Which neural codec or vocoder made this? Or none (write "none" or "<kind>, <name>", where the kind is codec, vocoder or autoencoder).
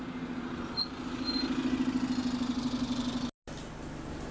none